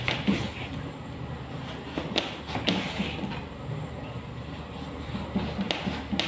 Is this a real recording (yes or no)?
yes